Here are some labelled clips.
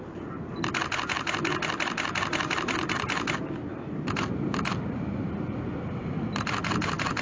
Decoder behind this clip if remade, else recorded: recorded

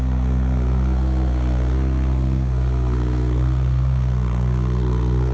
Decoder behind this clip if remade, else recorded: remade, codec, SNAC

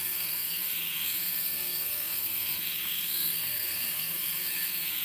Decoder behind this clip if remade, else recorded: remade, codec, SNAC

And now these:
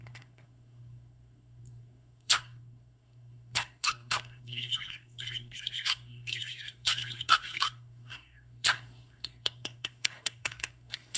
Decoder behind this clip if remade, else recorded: remade, codec, SNAC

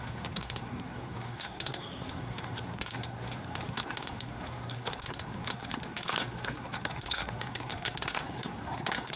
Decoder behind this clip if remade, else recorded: remade, codec, SNAC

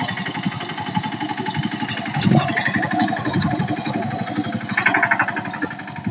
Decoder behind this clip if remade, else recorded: recorded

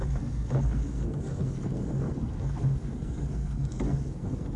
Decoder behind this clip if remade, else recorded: remade, codec, SNAC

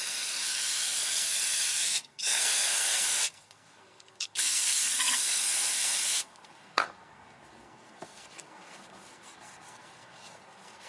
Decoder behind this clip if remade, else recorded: remade, codec, SNAC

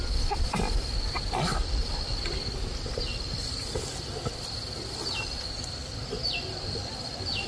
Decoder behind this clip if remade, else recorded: recorded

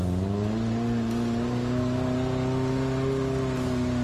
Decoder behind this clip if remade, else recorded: recorded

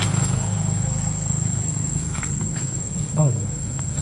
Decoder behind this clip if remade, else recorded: remade, codec, SNAC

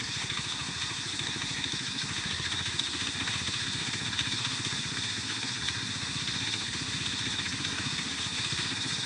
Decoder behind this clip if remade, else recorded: remade, codec, SNAC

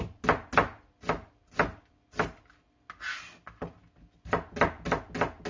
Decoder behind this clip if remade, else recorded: recorded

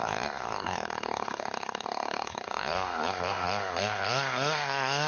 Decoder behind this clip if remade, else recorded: remade, codec, SNAC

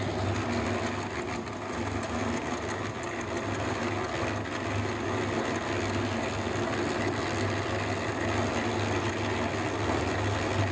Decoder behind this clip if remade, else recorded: recorded